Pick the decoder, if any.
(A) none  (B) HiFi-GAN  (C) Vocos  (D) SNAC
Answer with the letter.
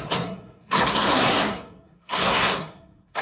D